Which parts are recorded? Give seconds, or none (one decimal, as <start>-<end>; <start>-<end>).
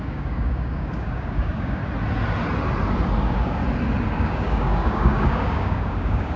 1.8-3.2; 3.6-4.1